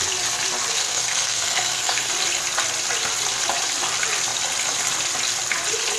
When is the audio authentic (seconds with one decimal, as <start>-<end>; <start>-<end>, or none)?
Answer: 0.0-0.8; 2.1-6.0